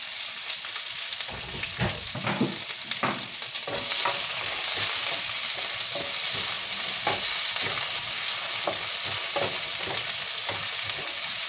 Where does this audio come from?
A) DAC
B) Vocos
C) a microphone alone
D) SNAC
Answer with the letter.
C